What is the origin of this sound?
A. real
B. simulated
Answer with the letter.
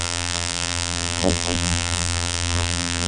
B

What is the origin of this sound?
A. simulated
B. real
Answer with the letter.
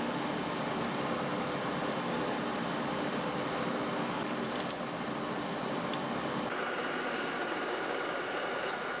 B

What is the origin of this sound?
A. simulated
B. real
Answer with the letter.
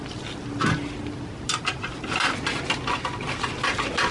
B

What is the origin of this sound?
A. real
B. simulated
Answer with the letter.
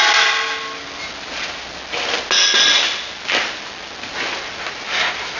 A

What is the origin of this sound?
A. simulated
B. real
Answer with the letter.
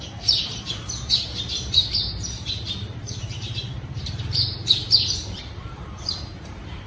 A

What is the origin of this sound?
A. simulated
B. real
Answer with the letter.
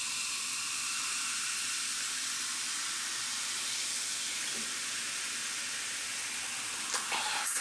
B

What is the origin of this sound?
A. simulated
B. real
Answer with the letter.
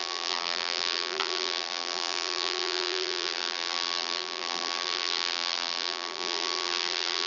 A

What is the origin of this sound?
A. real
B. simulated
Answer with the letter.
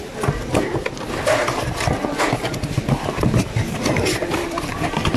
B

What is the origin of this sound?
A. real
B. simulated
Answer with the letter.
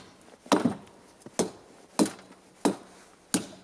A